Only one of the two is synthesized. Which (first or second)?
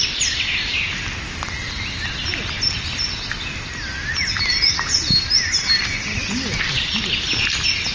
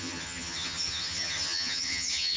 second